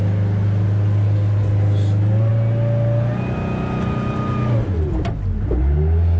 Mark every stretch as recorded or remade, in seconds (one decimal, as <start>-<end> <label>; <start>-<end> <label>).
0.0-6.2 recorded